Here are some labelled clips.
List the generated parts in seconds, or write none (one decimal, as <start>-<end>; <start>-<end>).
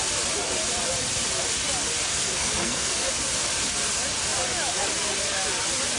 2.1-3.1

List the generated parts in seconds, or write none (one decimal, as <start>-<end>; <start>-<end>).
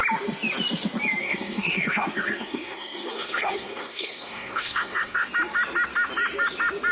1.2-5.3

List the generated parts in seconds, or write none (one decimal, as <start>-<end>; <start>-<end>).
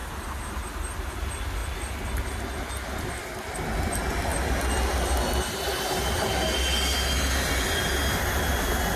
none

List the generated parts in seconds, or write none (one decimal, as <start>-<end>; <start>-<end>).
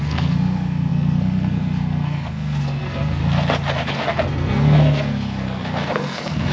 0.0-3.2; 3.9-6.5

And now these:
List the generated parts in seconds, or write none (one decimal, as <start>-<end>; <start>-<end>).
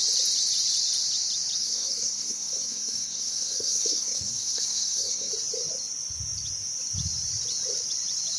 1.6-5.3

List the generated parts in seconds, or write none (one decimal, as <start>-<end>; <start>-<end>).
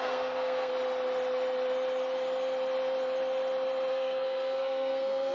0.0-0.7; 3.9-5.3